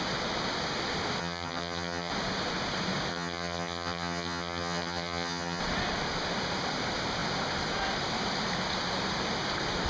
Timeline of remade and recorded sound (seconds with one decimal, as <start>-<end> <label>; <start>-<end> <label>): 0.0-1.2 recorded; 1.2-2.1 remade; 2.1-3.1 recorded; 3.1-5.6 remade; 5.6-9.9 recorded